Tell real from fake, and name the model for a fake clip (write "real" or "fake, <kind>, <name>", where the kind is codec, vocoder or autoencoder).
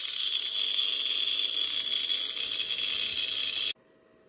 real